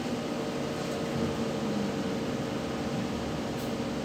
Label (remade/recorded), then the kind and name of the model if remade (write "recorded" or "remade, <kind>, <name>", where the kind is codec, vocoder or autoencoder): recorded